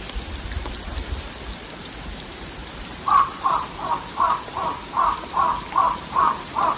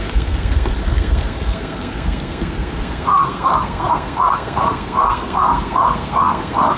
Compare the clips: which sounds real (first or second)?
first